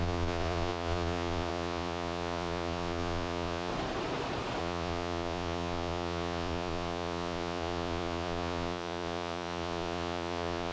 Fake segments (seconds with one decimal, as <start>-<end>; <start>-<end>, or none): 0.0-3.7; 4.6-10.7